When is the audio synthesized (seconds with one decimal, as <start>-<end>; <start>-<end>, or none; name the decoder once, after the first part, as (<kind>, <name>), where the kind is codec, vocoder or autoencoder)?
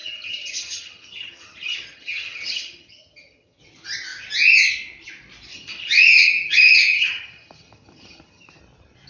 0.0-3.6 (vocoder, HiFi-GAN); 5.5-8.6